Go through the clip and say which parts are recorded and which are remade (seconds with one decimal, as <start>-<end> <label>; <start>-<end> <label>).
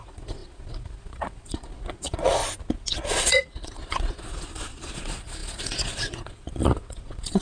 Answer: 0.0-2.4 remade; 2.4-3.1 recorded; 3.1-7.4 remade